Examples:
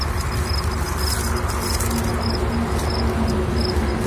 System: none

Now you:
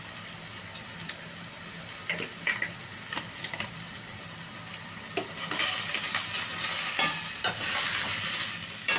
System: none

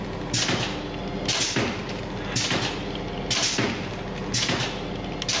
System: none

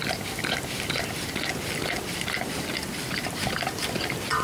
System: vocoder, BigVGAN v2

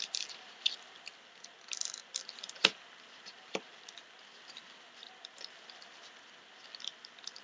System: none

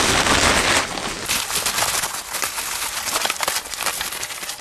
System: none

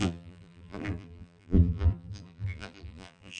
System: vocoder, BigVGAN v2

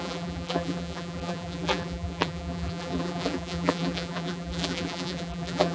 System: vocoder, BigVGAN v2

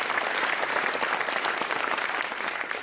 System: vocoder, BigVGAN v2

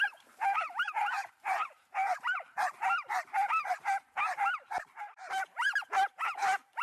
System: vocoder, BigVGAN v2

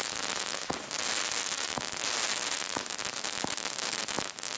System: none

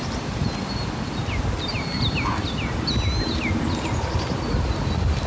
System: none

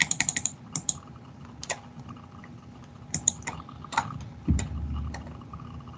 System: vocoder, BigVGAN v2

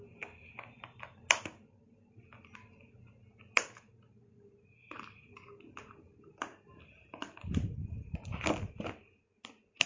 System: none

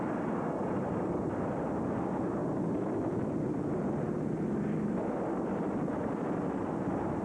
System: none